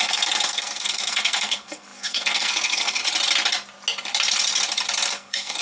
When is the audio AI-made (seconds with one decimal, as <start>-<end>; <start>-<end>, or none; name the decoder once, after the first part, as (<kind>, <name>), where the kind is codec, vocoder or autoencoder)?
0.0-3.0 (codec, SNAC); 5.1-5.6